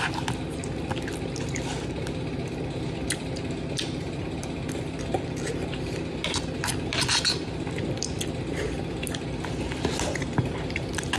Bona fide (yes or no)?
yes